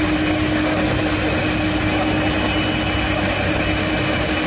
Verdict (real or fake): real